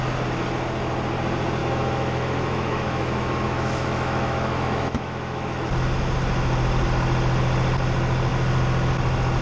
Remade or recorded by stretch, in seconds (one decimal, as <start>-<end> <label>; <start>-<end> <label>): 0.0-1.6 recorded; 1.6-5.7 remade; 5.7-9.4 recorded